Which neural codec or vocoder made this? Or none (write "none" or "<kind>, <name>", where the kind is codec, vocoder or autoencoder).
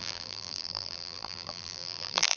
vocoder, BigVGAN v2